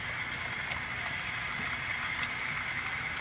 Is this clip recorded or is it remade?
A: recorded